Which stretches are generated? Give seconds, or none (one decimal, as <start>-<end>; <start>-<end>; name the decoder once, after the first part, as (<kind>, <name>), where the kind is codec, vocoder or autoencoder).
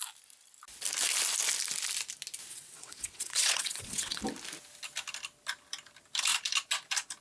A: 2.5-4.2 (vocoder, WaveNeXt)